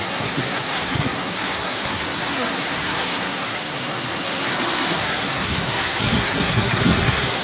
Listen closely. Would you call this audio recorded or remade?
remade